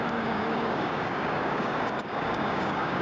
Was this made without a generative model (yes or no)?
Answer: no